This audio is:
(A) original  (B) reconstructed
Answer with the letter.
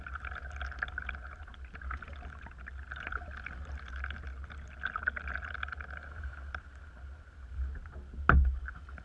A